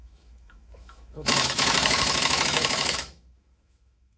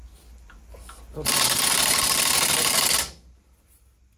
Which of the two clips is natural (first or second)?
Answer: second